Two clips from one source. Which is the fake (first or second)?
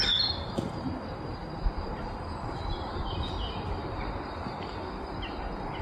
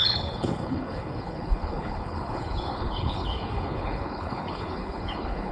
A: second